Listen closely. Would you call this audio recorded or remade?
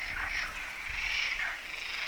recorded